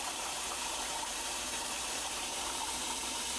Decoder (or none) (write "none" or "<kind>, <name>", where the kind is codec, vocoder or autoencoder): vocoder, BigVGAN v2